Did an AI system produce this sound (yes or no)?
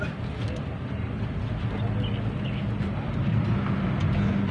no